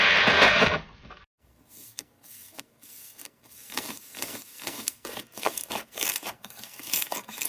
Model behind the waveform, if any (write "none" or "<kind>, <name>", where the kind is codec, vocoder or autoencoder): codec, SNAC